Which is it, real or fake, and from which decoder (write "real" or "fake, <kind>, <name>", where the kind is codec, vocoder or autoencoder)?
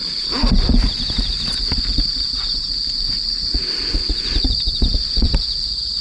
real